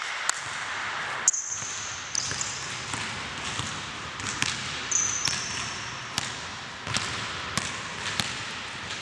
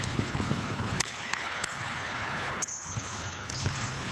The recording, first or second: first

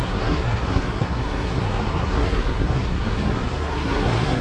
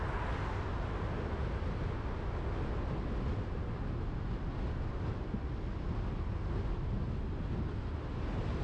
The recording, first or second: second